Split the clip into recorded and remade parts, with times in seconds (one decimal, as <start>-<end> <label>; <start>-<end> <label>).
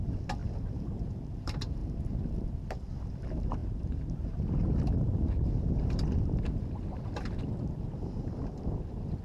0.0-0.4 recorded; 0.4-1.1 remade; 1.1-9.2 recorded